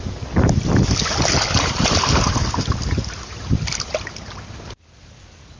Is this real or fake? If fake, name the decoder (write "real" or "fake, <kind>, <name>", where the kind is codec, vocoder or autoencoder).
real